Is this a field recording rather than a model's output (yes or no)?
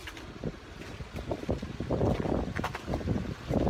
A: yes